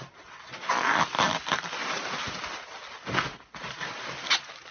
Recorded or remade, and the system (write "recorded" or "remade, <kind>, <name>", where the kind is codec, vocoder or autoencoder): recorded